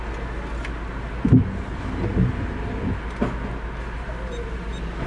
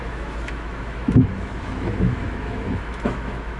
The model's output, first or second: second